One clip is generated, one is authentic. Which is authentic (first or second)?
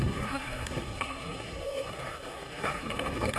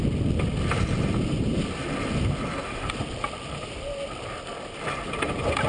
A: second